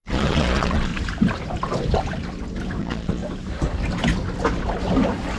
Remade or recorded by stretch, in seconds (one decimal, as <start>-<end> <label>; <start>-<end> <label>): 0.0-0.9 remade; 0.9-2.8 recorded; 2.8-3.2 remade; 3.2-5.4 recorded